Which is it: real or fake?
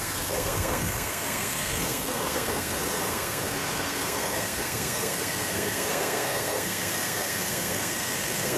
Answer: fake